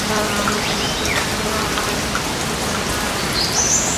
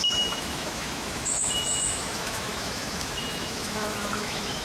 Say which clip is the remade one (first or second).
second